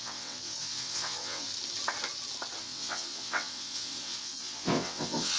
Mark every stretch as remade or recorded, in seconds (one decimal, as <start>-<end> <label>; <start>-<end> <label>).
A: 0.0-1.5 remade; 1.5-2.6 recorded; 2.6-5.4 remade